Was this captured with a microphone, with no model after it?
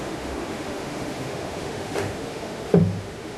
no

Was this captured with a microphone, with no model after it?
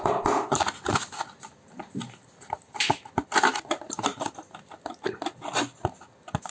yes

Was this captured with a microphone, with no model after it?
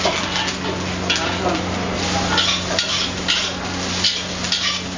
yes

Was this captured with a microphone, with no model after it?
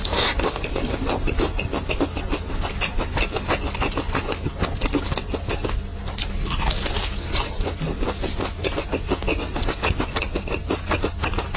yes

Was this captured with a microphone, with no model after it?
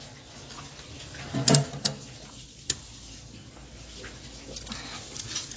yes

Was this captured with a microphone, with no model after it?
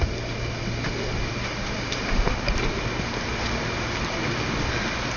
yes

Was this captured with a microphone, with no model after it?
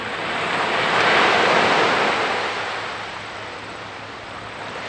yes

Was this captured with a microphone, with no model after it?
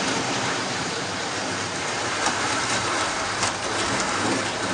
no